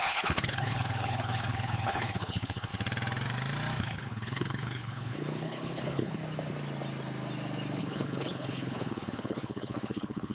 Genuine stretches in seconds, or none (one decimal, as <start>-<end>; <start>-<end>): 2.7-3.8; 6.2-7.8